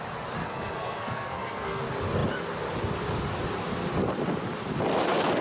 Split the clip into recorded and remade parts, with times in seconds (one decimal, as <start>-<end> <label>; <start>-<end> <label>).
0.0-0.4 recorded; 0.4-1.8 remade; 1.8-5.4 recorded